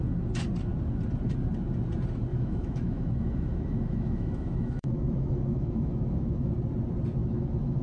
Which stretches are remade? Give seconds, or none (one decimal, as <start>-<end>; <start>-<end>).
2.3-6.5; 7.2-7.8